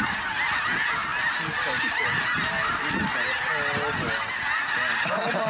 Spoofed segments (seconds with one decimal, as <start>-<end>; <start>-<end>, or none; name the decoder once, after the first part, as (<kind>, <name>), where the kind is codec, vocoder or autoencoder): none